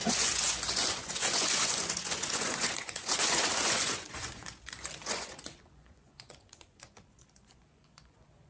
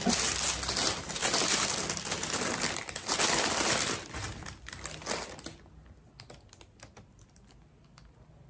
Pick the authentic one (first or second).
second